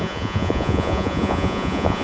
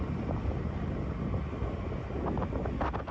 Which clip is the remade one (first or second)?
first